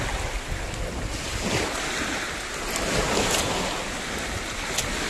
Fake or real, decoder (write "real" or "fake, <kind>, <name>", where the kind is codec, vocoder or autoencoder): real